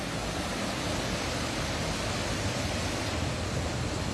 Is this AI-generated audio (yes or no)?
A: no